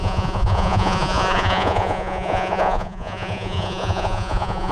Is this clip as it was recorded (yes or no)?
no